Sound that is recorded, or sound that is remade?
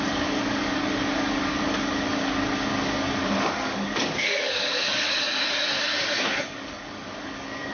remade